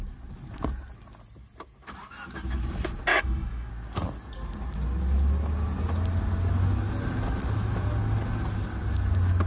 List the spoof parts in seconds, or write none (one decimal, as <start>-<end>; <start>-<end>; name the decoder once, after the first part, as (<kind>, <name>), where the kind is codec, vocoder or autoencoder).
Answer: 3.1-3.7 (autoencoder, DAC-VAE)

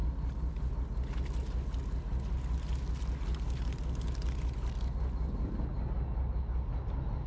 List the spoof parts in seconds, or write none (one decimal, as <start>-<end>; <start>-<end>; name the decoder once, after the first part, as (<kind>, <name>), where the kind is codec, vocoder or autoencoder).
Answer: none

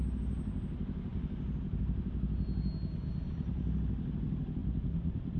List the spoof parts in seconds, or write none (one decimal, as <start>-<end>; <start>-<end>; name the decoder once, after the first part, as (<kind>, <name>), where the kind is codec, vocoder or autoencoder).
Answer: 4.6-5.4 (vocoder, BigVGAN v2)